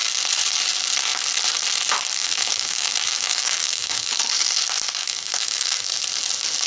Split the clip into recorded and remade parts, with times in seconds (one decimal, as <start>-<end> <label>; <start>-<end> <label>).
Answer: 0.0-2.2 recorded; 2.2-4.1 remade; 4.1-5.0 recorded; 5.0-5.9 remade; 5.9-6.7 recorded